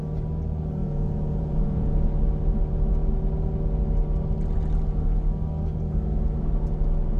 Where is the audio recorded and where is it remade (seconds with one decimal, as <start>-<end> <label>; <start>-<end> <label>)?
0.0-0.8 recorded; 0.8-2.2 remade; 2.2-7.2 recorded